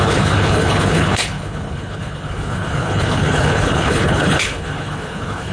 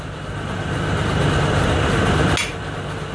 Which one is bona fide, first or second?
second